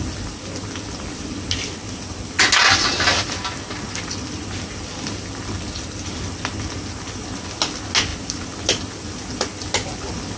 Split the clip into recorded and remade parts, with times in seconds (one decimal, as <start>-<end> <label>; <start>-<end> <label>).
0.0-10.4 recorded